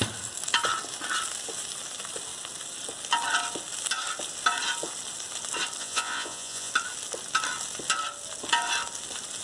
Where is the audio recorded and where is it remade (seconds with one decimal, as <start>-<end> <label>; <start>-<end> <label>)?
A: 0.0-5.8 recorded; 5.8-6.7 remade; 6.7-9.4 recorded